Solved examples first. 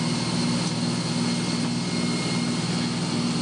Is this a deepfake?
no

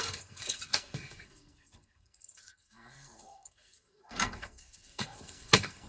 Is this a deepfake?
yes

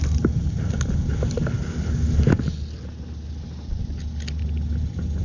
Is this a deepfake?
no